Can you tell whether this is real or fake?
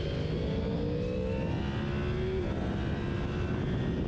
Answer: real